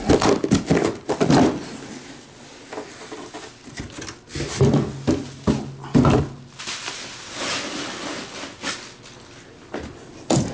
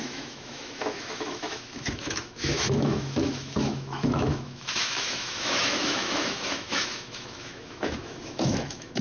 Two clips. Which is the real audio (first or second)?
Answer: first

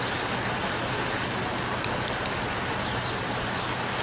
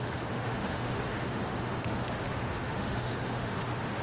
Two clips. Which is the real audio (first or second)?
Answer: first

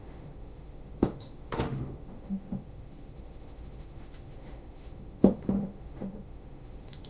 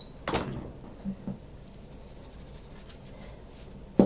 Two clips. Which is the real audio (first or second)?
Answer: second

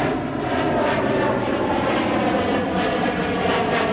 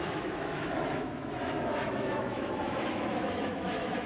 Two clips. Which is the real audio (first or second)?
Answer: first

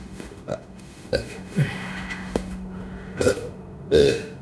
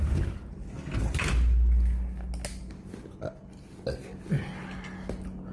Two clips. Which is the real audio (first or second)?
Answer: second